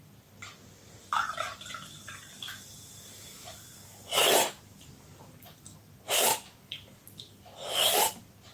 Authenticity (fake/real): real